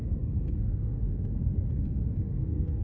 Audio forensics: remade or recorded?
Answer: remade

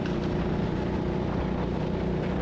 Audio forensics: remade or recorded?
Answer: recorded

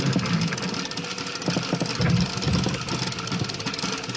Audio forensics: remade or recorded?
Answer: recorded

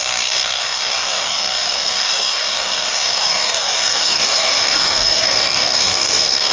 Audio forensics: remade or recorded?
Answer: remade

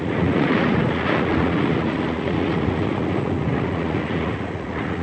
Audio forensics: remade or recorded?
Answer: remade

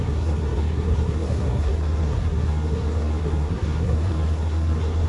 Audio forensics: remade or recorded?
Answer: remade